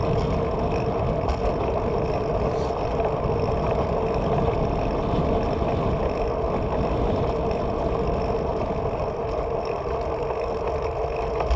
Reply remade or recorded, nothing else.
recorded